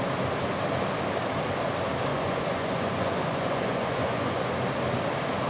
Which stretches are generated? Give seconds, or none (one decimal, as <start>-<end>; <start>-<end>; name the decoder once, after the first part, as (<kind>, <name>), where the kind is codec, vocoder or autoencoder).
2.1-4.5 (vocoder, Vocos)